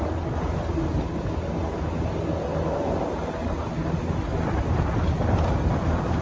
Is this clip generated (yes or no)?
no